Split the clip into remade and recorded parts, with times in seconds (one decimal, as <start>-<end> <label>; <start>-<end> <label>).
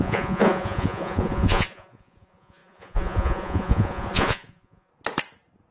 0.0-4.9 remade; 4.9-5.7 recorded